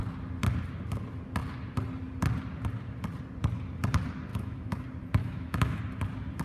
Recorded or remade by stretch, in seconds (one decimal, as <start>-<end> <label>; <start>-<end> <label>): 0.0-4.3 recorded; 4.3-4.8 remade; 4.8-5.2 recorded; 5.2-5.8 remade; 5.8-6.4 recorded